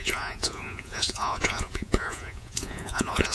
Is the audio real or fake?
fake